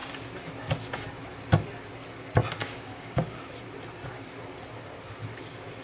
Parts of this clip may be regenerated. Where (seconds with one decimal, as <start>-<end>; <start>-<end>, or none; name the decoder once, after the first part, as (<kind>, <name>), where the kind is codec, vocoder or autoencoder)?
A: 2.6-3.4 (codec, DAC)